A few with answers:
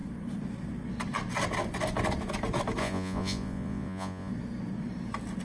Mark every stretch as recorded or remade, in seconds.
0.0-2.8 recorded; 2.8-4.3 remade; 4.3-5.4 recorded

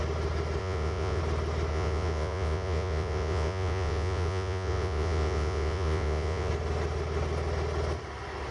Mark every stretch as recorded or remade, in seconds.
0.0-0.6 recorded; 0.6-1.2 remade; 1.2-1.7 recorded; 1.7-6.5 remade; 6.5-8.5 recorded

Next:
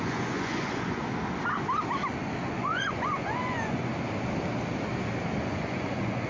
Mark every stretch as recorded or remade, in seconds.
0.0-1.0 remade; 1.0-2.4 recorded; 2.4-3.9 remade; 3.9-5.4 recorded; 5.4-6.3 remade

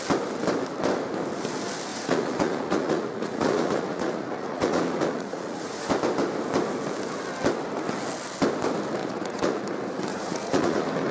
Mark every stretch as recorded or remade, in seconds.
0.0-1.9 recorded; 1.9-5.9 remade; 5.9-9.0 recorded; 9.0-9.6 remade; 9.6-10.1 recorded; 10.1-11.1 remade

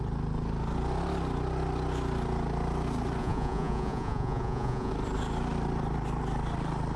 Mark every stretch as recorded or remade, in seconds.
0.0-3.2 recorded; 3.2-4.9 remade; 4.9-7.0 recorded

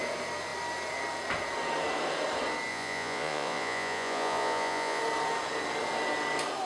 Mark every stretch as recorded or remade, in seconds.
0.0-2.7 recorded; 2.7-5.0 remade; 5.0-6.7 recorded